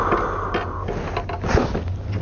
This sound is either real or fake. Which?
real